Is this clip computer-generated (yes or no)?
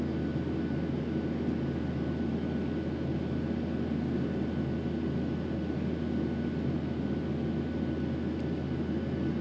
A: no